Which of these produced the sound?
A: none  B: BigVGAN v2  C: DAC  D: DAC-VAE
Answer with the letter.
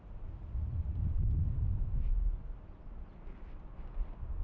A